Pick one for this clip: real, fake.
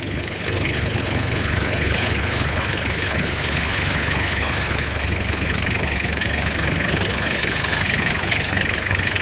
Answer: fake